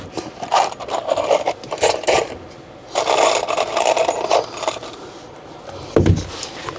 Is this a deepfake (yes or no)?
no